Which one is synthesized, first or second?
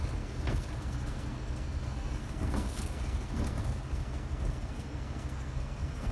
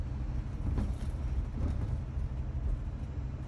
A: first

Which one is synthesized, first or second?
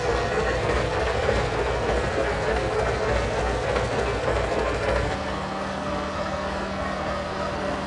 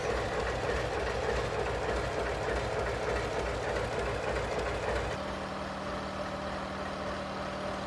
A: first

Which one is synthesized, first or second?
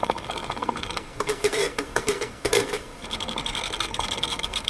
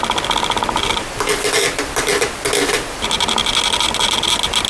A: first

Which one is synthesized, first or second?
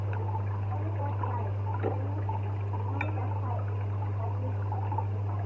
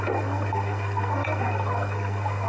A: second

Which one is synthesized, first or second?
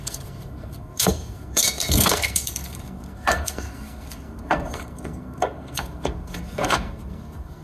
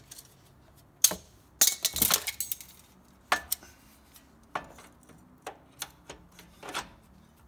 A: first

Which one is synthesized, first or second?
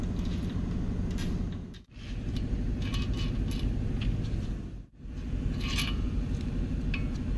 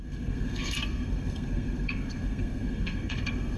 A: second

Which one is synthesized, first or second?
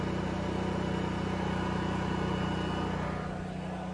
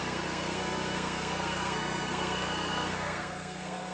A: second